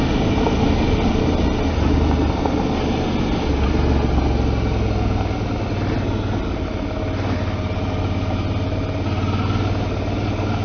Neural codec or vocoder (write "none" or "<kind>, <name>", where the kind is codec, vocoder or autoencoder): none